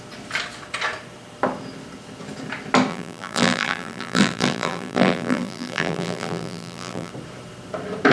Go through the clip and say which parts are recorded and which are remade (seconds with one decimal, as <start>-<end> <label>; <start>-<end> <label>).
0.0-2.9 recorded; 2.9-7.1 remade; 7.1-8.1 recorded